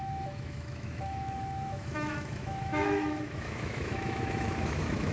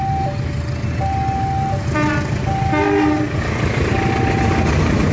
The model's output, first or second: first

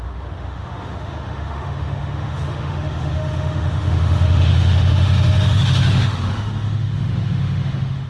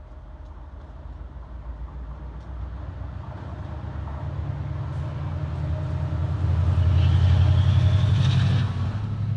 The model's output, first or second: first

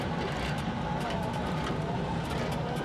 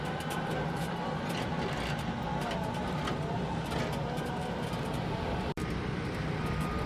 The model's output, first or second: first